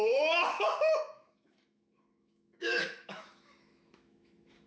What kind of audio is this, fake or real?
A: fake